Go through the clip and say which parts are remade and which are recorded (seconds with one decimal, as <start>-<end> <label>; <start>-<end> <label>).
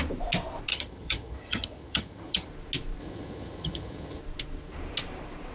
0.0-0.7 recorded; 0.7-2.5 remade; 2.5-3.0 recorded; 3.0-4.2 remade; 4.2-5.5 recorded